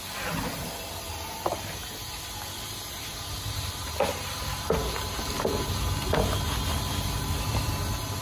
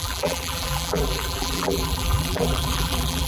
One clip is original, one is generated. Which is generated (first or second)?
second